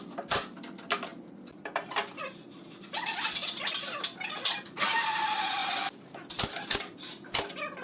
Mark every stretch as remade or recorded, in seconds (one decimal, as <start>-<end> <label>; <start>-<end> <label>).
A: 0.0-7.8 recorded